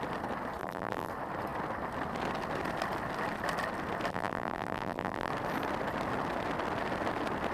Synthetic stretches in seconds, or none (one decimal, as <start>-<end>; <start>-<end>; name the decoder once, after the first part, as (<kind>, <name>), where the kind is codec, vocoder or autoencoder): 0.6-1.1 (vocoder, BigVGAN v2); 4.1-5.3